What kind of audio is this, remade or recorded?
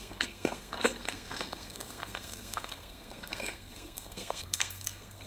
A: remade